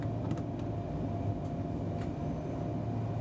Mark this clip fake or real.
real